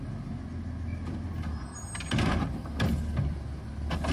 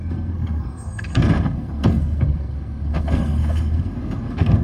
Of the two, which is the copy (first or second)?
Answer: second